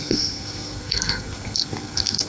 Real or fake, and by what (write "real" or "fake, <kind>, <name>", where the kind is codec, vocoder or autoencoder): fake, codec, SNAC